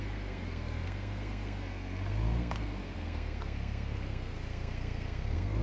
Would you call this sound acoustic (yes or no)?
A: no